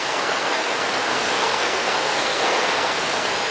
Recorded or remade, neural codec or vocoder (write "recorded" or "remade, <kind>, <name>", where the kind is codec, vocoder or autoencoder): remade, codec, SNAC